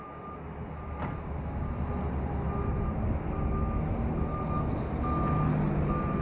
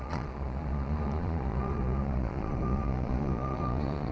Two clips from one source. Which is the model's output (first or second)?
second